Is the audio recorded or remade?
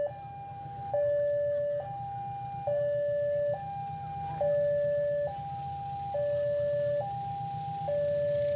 recorded